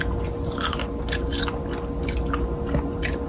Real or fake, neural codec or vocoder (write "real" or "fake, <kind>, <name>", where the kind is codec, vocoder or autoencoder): real